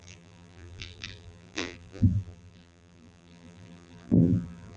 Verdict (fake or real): fake